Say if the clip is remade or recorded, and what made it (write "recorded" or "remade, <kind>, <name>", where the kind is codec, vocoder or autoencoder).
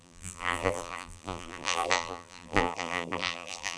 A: remade, vocoder, BigVGAN v2